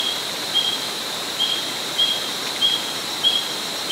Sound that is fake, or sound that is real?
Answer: fake